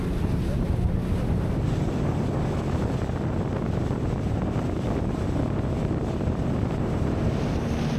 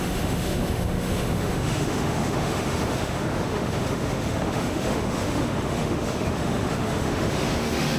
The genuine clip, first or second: first